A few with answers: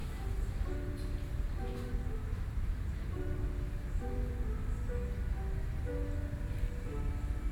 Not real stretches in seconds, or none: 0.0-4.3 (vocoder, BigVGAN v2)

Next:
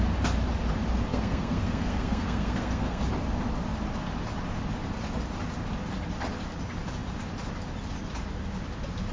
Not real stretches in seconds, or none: 1.1-3.0 (codec, SNAC)

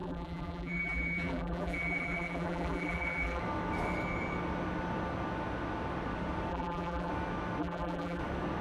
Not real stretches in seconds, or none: 0.0-3.4 (vocoder, BigVGAN v2); 6.5-7.1; 7.6-8.2

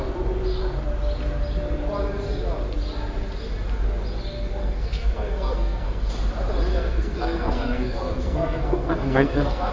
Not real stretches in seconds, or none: 4.6-6.1 (codec, SNAC); 6.7-9.7

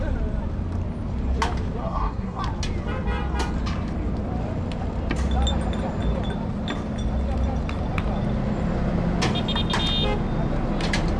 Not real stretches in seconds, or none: 1.8-2.4 (codec, SNAC)